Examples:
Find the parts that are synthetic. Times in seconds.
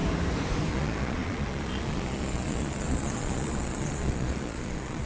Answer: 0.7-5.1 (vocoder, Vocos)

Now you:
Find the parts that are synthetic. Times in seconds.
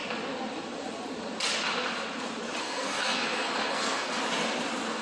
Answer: 2.6-4.2 (codec, SNAC)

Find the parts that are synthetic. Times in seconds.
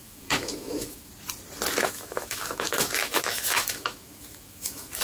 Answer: 0.0-1.1 (autoencoder, DAC-VAE); 1.8-5.0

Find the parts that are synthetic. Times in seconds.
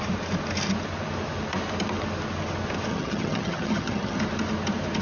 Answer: 2.9-4.2 (vocoder, HiFi-GAN)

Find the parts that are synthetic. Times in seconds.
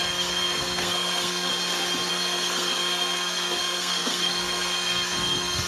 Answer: 0.0-1.5 (codec, SNAC); 2.1-5.7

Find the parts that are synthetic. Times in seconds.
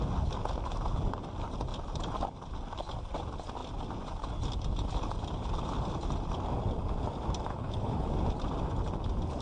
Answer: 7.5-8.1 (codec, HILCodec)